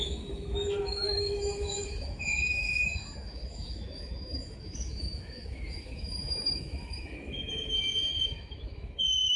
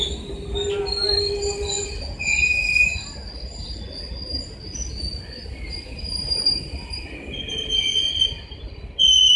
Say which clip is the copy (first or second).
first